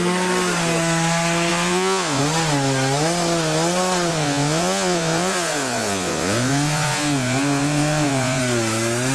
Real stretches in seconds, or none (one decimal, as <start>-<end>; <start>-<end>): 0.0-1.5; 2.2-4.1; 8.4-9.1